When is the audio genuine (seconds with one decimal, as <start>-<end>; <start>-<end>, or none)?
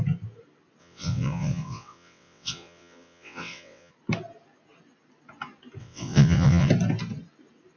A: 0.0-0.8; 3.9-5.8; 6.7-7.8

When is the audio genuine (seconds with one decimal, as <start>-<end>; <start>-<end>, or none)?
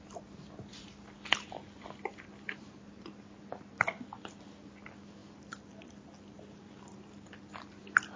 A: 0.0-8.2